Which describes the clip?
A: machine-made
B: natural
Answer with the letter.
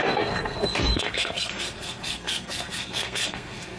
A